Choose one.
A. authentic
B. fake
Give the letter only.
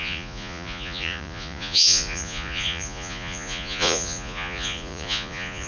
B